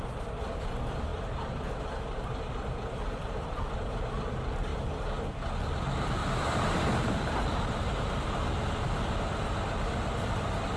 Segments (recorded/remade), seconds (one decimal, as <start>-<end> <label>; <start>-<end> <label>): 0.0-1.1 recorded; 1.1-3.6 remade; 3.6-6.2 recorded; 6.2-7.9 remade; 7.9-10.8 recorded